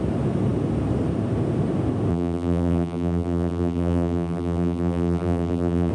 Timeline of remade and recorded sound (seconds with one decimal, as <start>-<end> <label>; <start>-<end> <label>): 0.0-2.1 recorded; 2.1-5.9 remade

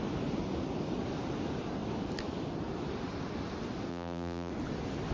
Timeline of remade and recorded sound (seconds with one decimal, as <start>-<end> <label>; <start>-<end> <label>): 0.0-3.9 recorded; 3.9-4.5 remade; 4.5-5.1 recorded

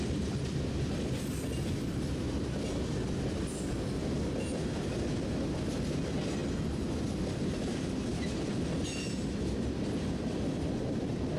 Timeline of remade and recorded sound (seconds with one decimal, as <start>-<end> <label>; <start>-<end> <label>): 0.0-11.4 recorded

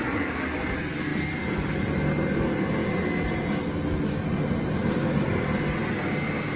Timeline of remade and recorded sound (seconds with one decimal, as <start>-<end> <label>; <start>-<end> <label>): 0.0-1.1 recorded; 1.1-1.7 remade; 1.7-6.6 recorded

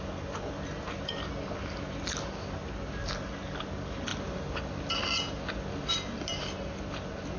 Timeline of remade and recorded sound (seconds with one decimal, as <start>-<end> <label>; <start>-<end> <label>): 0.0-3.0 recorded; 3.0-3.5 remade; 3.5-7.4 recorded

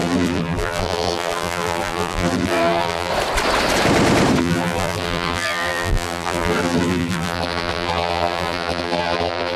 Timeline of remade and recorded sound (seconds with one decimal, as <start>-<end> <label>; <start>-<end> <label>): 0.0-3.1 remade; 3.1-4.4 recorded; 4.4-9.6 remade

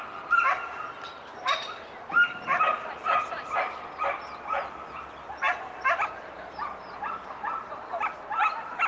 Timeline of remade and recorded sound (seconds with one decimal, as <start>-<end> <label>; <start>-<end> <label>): 0.0-1.3 recorded; 1.3-3.5 remade; 3.5-5.5 recorded; 5.5-7.7 remade; 7.7-8.4 recorded; 8.4-8.9 remade

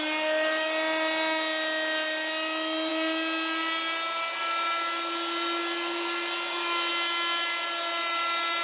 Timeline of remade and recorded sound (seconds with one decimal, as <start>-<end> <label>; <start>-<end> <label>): 0.0-8.6 recorded